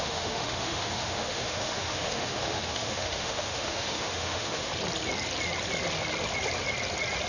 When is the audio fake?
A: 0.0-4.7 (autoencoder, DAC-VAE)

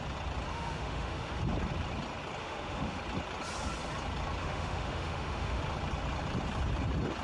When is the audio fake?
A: 0.5-1.4 (autoencoder, DAC-VAE); 2.4-3.0; 4.4-5.6

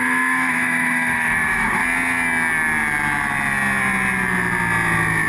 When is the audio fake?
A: 0.0-1.8 (autoencoder, DAC-VAE)

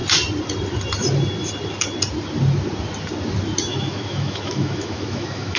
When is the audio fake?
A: 3.7-5.6 (autoencoder, DAC-VAE)